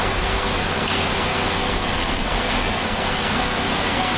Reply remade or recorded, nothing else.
remade